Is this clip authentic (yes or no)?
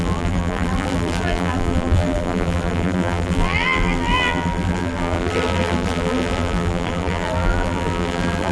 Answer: no